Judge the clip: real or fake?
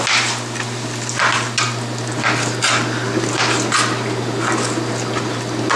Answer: real